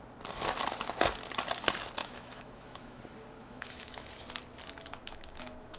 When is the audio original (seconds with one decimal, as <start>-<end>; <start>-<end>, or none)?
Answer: 0.0-2.0; 3.0-3.4; 4.2-5.0